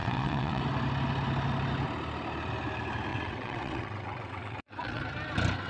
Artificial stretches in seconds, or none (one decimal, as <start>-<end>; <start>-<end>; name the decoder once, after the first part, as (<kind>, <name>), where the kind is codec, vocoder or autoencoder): 0.0-0.6 (vocoder, WaveNeXt); 3.1-5.0